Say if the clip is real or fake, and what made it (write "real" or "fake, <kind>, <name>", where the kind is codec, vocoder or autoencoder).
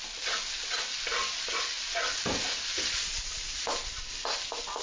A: real